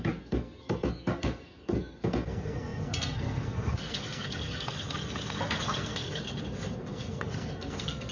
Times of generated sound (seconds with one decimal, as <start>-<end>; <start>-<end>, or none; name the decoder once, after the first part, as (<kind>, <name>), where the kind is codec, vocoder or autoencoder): 0.0-8.1 (codec, SNAC)